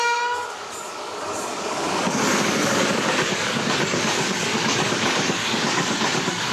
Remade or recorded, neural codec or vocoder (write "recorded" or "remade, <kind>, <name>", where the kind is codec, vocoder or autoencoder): remade, codec, DAC